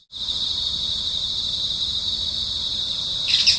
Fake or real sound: real